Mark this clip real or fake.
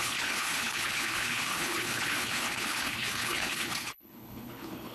fake